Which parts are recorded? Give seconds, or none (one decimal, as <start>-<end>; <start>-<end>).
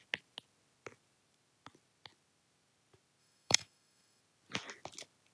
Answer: 0.0-3.2; 4.2-5.3